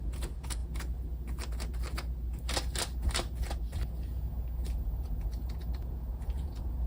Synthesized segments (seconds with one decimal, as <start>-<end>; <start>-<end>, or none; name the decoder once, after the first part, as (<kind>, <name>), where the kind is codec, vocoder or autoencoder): 0.0-0.6 (vocoder, Vocos); 4.7-6.9